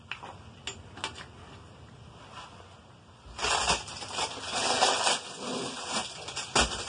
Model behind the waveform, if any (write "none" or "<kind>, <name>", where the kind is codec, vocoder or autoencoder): none